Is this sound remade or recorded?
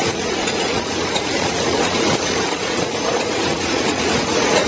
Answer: remade